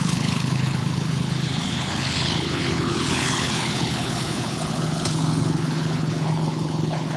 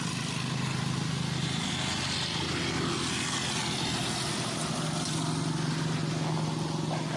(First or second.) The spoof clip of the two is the first